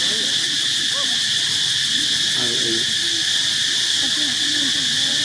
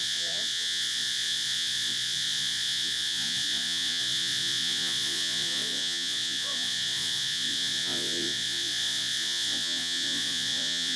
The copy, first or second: second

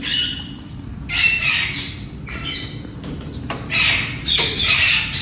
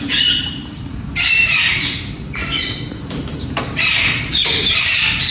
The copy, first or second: second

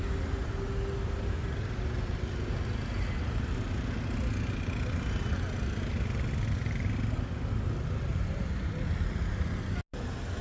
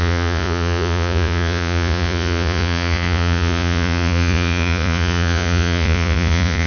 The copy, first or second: second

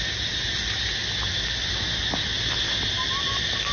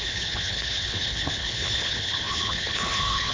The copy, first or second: second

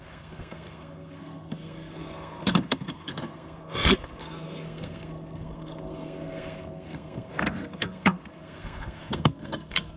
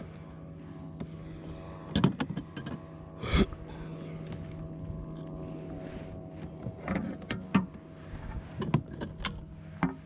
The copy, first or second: first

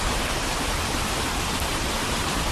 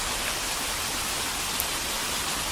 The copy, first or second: first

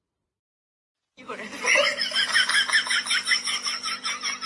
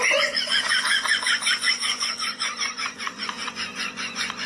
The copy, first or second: second